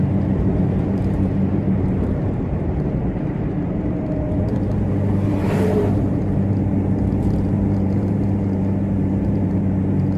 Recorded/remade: remade